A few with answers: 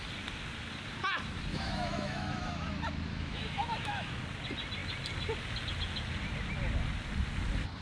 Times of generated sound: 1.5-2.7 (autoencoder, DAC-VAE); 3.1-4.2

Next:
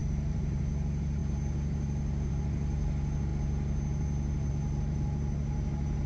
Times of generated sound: 0.0-0.6 (vocoder, BigVGAN v2)

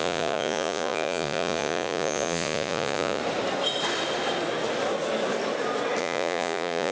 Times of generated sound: 0.0-3.2 (vocoder, Vocos); 6.0-6.9

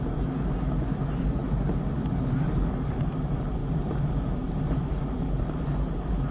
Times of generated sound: none